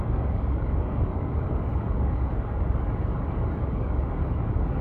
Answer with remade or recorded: remade